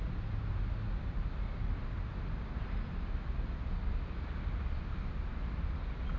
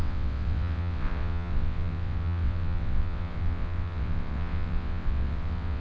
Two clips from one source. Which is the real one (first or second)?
first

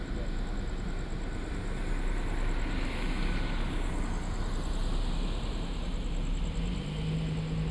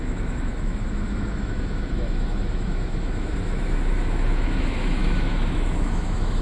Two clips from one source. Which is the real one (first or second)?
first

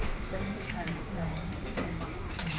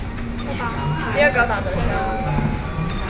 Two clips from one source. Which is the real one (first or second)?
second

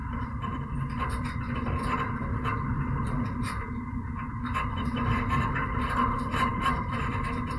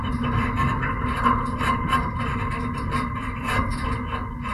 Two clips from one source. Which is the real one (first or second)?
second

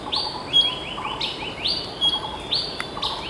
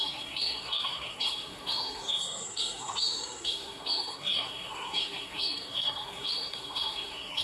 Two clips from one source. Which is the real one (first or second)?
first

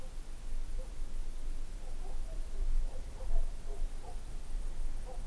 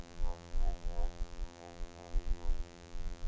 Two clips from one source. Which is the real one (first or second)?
first